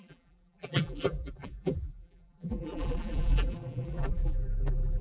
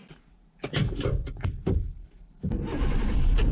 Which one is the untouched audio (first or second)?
second